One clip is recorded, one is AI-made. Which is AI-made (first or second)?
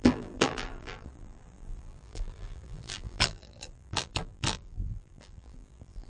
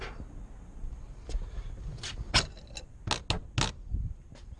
first